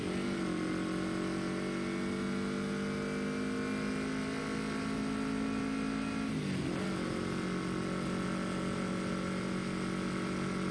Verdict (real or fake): real